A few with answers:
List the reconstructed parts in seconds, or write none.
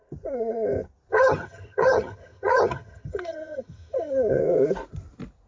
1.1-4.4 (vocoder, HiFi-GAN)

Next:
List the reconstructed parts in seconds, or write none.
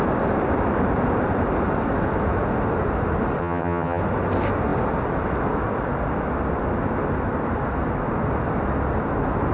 3.4-4.0 (vocoder, HiFi-GAN)